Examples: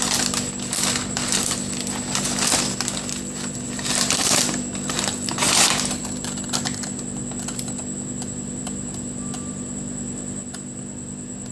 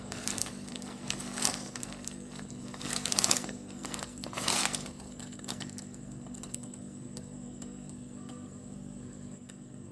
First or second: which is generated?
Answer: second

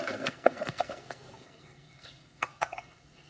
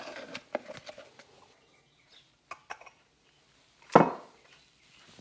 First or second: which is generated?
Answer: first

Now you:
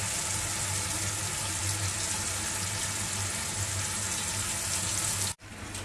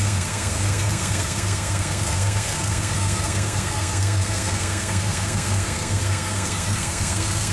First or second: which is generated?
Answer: second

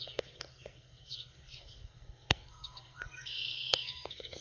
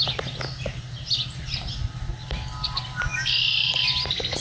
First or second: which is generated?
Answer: first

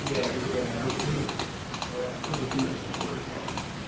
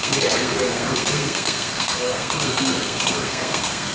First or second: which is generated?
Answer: second